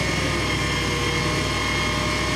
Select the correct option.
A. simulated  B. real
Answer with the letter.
B